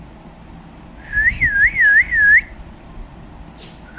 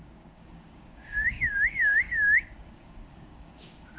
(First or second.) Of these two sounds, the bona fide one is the first